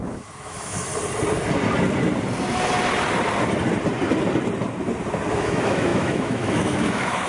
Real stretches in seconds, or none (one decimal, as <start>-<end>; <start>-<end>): 0.9-5.3